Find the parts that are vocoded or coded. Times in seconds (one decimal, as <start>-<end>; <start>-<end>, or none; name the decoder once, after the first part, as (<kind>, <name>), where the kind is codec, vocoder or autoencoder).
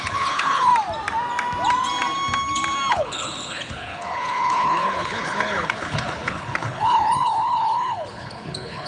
0.0-0.7 (codec, HILCodec); 2.9-8.9